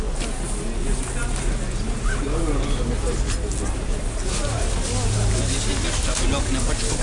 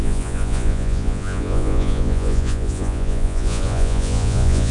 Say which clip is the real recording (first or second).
first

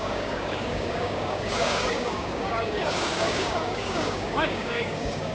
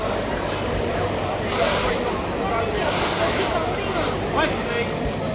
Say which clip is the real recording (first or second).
second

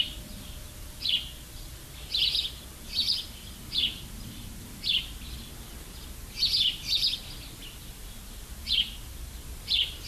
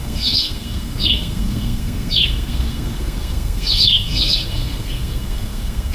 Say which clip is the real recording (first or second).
first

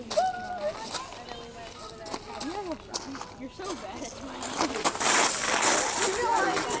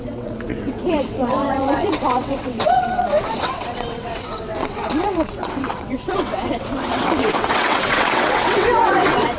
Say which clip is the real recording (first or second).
first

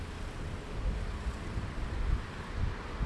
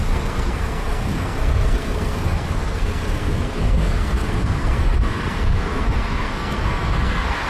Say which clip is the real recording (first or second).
first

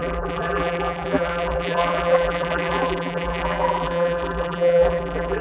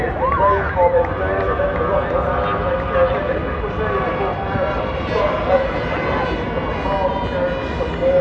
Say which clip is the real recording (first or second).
second